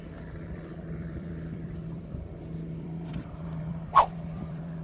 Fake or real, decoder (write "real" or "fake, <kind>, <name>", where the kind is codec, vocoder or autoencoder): fake, vocoder, BigVGAN v2